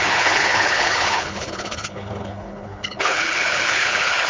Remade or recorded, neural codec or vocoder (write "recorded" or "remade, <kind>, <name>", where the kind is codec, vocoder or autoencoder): remade, codec, HILCodec